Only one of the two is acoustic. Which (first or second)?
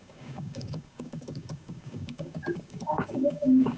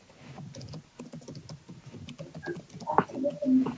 second